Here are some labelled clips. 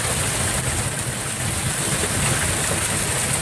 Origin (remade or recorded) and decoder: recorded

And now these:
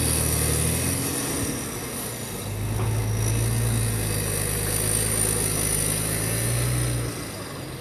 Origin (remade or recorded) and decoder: recorded